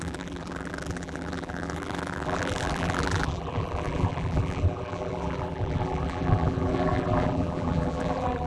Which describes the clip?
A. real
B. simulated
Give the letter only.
B